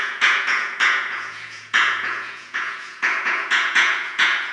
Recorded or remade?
remade